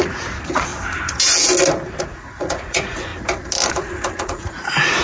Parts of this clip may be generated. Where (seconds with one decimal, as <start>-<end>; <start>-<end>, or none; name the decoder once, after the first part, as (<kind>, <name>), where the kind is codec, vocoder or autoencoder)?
0.0-0.7 (vocoder, Vocos); 2.0-3.1; 3.7-5.0